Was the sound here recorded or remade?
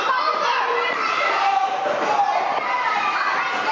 recorded